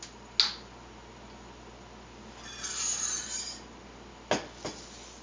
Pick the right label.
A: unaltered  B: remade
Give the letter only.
A